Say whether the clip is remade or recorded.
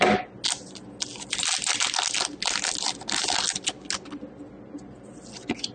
recorded